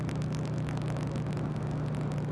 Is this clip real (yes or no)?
yes